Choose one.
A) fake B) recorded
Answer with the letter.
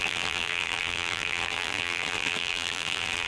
A